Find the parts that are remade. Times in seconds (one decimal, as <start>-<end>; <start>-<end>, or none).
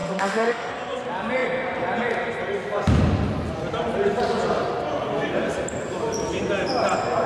0.0-0.7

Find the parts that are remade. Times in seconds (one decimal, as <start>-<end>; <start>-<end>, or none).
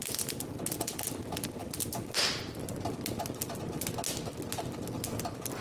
none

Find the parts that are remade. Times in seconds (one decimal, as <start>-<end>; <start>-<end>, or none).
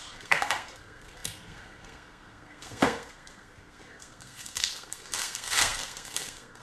0.0-6.6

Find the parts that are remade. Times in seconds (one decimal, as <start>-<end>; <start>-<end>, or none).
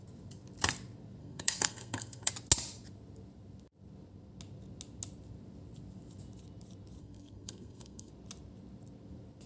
1.2-2.3; 7.0-8.1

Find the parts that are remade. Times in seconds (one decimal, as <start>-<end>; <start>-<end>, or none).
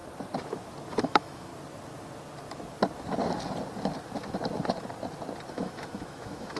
1.0-1.5; 5.5-6.6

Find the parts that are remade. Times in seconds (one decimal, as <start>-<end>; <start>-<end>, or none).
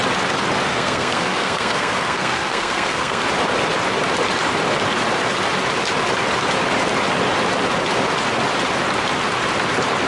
0.7-3.2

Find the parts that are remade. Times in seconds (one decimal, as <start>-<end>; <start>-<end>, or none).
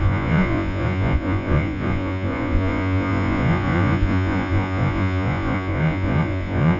0.0-6.8